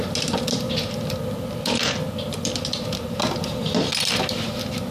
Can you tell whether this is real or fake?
real